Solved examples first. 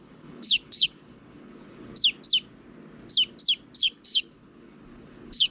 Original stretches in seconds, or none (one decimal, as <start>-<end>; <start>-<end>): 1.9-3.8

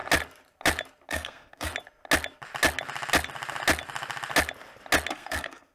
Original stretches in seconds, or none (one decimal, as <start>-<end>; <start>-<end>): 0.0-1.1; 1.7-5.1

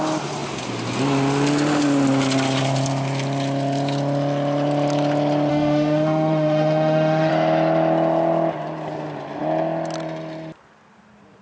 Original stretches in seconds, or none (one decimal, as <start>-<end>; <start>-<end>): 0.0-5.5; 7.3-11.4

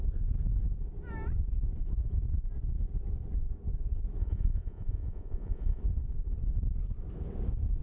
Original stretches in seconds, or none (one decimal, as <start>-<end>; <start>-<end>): 0.0-4.2; 5.8-7.8